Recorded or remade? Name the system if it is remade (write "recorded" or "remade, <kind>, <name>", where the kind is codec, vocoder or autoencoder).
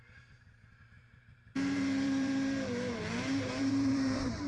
remade, vocoder, BigVGAN v2